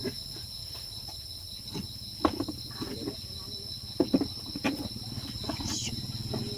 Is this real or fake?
real